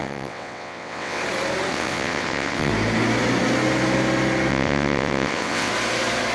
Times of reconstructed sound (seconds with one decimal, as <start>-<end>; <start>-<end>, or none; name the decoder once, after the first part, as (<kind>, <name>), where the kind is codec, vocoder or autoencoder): 0.0-1.2 (vocoder, WaveNeXt); 1.7-2.7; 4.5-5.7